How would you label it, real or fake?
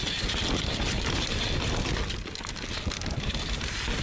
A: real